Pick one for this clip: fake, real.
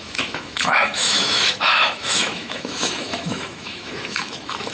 fake